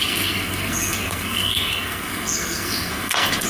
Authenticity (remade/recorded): remade